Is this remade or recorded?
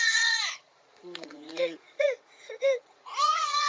remade